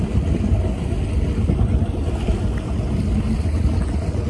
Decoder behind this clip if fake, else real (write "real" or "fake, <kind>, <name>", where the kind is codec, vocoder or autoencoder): real